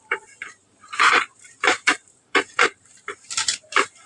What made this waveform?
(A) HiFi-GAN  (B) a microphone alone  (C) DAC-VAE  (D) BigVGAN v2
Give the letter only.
D